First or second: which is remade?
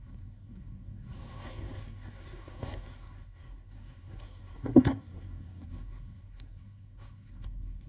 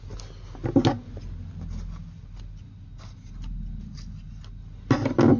first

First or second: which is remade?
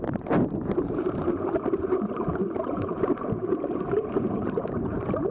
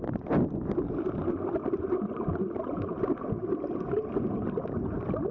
first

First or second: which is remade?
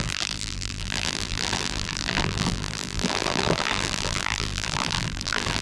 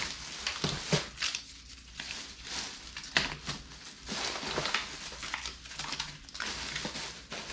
first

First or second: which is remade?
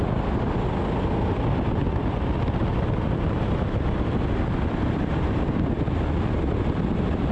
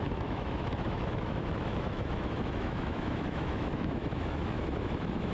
second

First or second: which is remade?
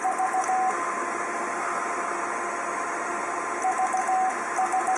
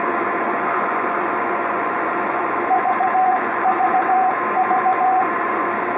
second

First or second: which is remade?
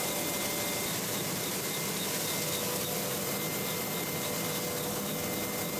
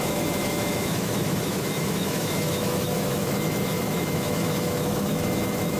second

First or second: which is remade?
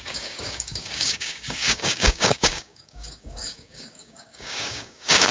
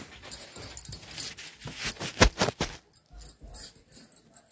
first